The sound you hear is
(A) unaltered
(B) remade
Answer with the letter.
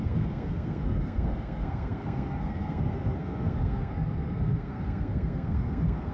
B